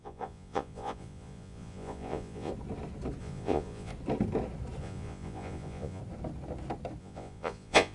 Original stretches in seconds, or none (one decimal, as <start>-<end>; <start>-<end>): 2.5-3.2; 3.9-4.8; 6.0-7.0